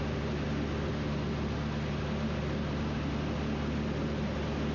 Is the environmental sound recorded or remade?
recorded